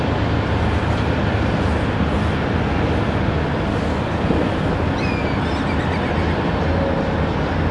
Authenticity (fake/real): real